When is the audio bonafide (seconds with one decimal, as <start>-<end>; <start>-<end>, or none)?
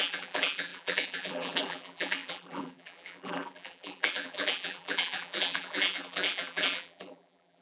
none